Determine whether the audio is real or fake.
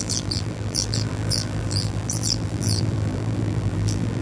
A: fake